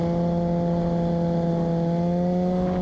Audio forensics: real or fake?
real